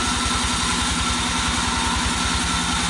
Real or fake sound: real